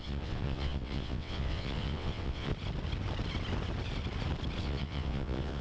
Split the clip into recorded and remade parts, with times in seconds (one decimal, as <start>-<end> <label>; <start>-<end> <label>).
0.0-2.5 remade; 2.5-4.6 recorded; 4.6-5.6 remade